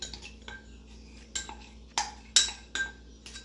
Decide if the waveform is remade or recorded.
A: recorded